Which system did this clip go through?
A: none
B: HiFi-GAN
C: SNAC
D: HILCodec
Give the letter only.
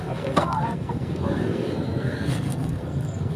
C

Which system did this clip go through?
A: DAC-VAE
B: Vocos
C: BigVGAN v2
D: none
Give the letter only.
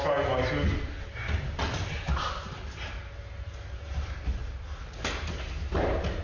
D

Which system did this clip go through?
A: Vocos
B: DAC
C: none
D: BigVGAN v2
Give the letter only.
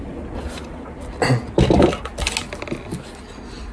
C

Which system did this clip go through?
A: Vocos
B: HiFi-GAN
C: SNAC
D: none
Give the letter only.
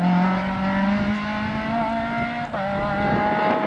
D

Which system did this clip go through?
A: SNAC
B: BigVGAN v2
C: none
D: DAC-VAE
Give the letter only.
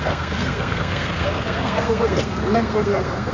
A